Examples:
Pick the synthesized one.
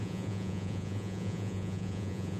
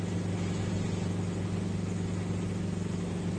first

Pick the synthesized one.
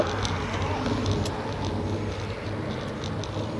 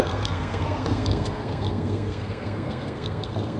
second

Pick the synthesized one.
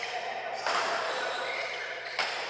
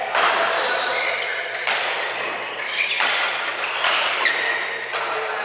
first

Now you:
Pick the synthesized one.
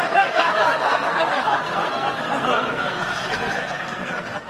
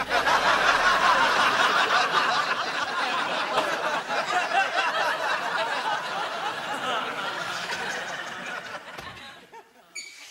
first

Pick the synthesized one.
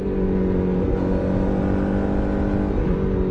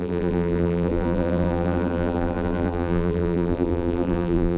second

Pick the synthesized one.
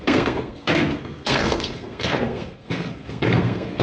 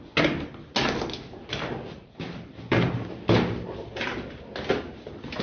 first